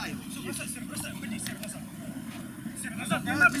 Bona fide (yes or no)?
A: yes